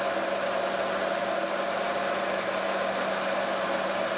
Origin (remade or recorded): recorded